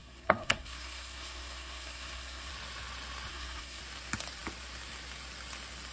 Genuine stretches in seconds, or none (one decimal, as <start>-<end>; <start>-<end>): 2.5-3.3; 3.8-5.9